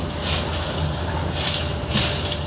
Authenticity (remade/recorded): recorded